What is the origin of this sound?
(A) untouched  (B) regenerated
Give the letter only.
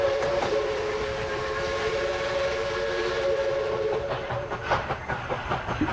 B